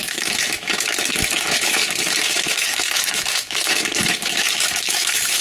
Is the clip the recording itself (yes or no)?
no